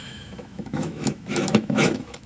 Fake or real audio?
fake